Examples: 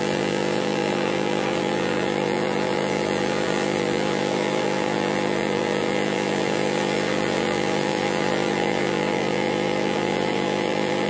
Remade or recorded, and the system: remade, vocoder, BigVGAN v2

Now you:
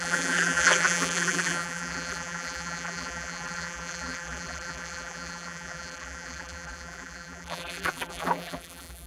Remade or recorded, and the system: remade, vocoder, BigVGAN v2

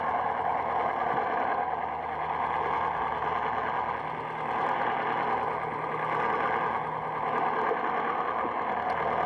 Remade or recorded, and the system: recorded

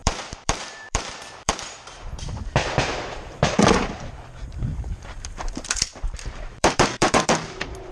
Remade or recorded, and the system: remade, vocoder, BigVGAN v2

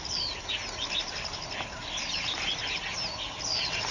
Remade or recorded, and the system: recorded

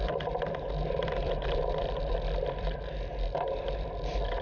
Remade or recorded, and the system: remade, vocoder, BigVGAN v2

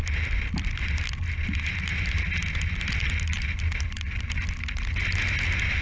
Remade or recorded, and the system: recorded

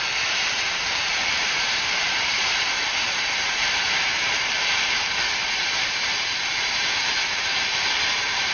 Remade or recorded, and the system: remade, vocoder, BigVGAN v2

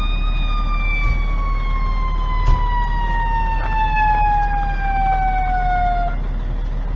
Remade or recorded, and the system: recorded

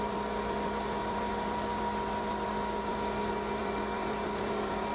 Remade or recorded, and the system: remade, vocoder, BigVGAN v2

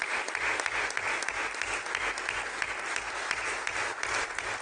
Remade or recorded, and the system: recorded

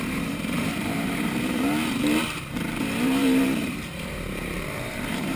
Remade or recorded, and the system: remade, vocoder, BigVGAN v2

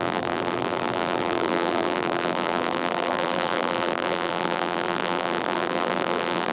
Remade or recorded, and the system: remade, vocoder, BigVGAN v2